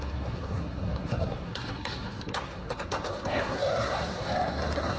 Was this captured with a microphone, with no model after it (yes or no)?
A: no